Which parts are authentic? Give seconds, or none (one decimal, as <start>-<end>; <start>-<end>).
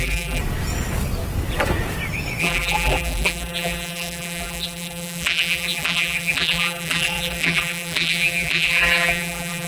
0.4-2.4